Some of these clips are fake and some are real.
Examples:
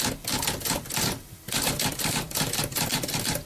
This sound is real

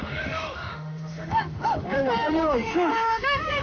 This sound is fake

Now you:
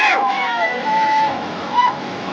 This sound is fake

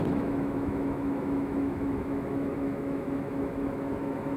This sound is fake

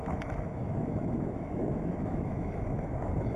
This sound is fake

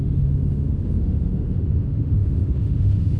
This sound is fake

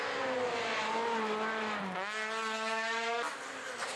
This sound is real